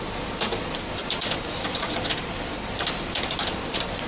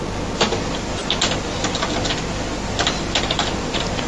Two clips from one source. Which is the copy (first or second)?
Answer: first